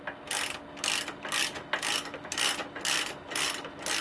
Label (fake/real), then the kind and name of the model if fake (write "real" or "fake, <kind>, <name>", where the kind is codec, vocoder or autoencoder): real